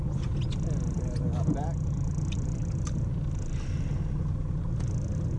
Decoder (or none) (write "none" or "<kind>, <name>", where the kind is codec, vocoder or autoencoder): none